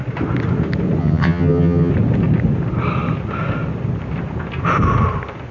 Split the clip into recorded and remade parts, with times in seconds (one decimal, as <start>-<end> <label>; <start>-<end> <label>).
0.0-1.0 recorded; 1.0-1.9 remade; 1.9-5.5 recorded

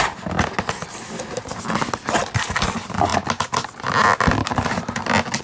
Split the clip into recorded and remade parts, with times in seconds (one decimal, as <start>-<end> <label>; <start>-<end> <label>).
0.0-5.4 recorded